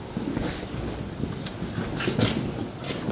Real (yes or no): yes